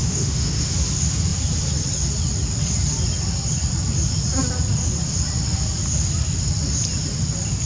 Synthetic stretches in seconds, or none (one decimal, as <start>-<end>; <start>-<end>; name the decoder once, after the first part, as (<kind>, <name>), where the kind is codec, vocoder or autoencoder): 0.0-0.7 (autoencoder, DAC-VAE)